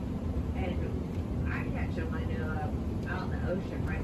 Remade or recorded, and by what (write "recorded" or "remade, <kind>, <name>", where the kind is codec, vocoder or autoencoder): remade, vocoder, BigVGAN v2